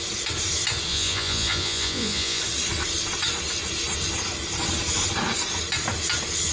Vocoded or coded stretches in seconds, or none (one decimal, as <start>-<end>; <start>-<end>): 0.9-2.4